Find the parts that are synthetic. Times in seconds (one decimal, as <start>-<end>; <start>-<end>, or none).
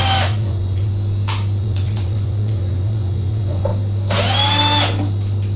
0.0-0.9; 1.6-3.7